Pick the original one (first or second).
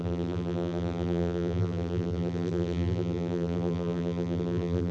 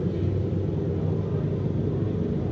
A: second